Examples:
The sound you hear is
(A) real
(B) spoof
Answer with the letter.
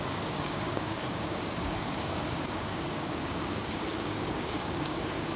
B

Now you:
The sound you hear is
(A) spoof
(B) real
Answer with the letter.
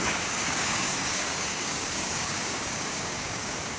A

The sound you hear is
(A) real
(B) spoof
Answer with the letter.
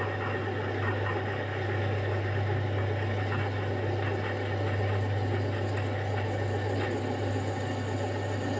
A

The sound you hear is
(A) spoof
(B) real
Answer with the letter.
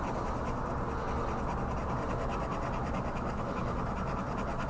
B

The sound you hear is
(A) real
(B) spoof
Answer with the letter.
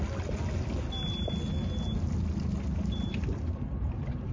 A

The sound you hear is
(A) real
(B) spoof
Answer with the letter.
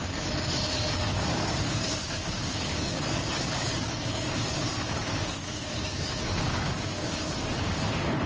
B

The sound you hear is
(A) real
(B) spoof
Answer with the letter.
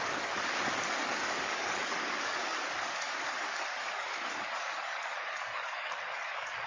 B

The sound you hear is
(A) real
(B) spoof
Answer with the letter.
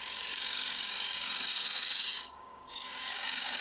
B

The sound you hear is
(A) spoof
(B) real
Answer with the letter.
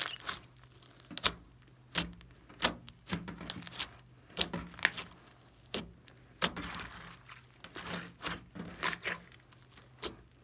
B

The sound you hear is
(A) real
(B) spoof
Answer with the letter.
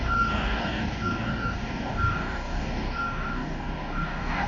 B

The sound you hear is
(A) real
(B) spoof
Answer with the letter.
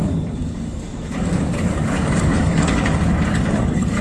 B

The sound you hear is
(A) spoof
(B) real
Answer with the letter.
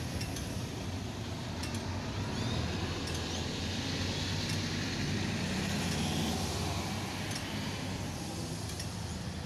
B